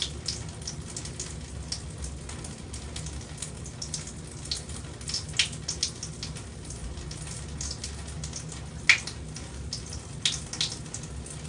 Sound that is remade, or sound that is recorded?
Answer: recorded